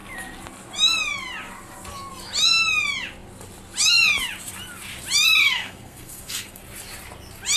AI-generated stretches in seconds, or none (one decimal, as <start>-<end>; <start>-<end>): 5.4-6.6